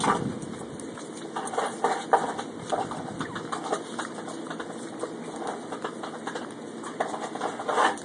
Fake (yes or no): no